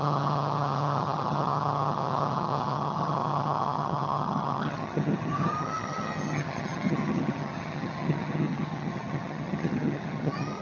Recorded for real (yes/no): no